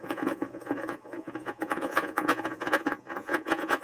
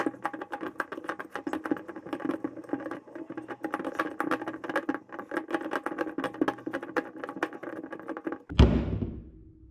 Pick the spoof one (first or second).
first